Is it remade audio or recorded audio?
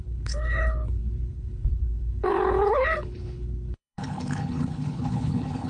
remade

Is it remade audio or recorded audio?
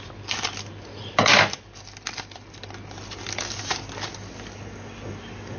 recorded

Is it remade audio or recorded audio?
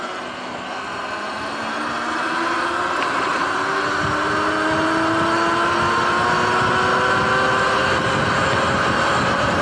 recorded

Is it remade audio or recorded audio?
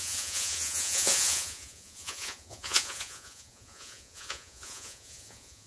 remade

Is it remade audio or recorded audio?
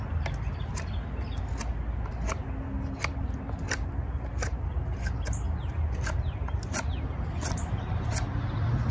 recorded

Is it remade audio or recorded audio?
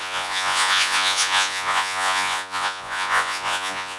remade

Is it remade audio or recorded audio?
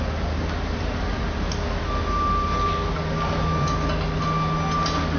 recorded